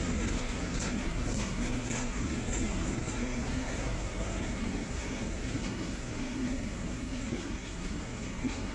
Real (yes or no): no